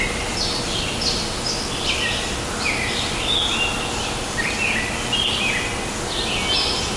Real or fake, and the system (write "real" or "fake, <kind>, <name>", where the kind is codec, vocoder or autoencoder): real